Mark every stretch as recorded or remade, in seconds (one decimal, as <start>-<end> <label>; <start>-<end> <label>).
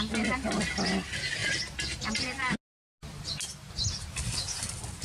0.0-5.0 recorded